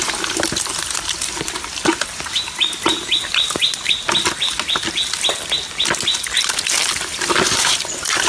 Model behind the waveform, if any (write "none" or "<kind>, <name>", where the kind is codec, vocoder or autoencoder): none